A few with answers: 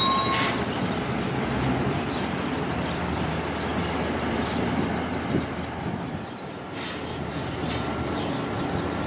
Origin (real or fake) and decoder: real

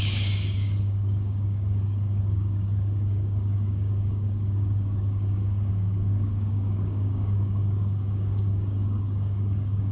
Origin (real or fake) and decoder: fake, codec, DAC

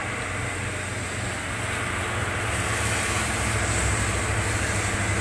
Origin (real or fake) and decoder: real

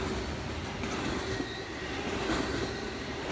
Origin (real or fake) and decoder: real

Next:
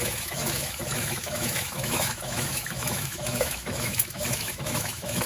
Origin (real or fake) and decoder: fake, autoencoder, DAC-VAE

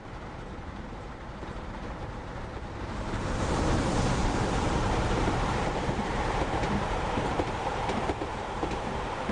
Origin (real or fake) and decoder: fake, vocoder, BigVGAN v2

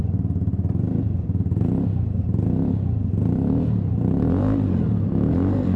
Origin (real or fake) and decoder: real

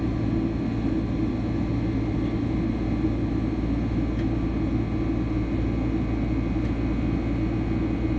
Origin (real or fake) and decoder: real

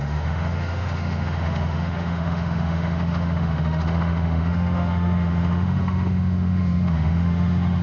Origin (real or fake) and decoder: fake, autoencoder, DAC-VAE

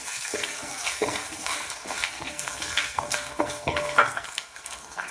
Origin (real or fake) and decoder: fake, codec, SNAC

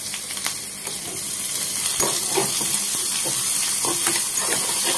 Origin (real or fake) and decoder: fake, vocoder, BigVGAN v2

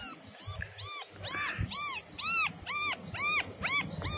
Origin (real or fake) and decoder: real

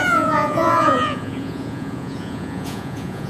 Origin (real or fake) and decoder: fake, vocoder, Vocos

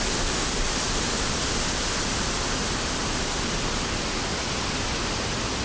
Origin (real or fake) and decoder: real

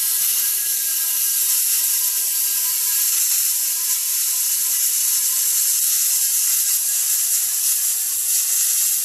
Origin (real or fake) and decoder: real